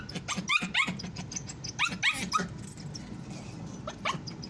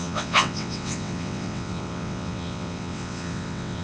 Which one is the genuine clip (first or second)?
first